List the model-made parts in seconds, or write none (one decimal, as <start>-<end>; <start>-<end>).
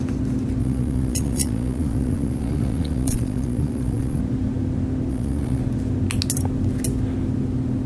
0.6-4.2; 5.1-5.6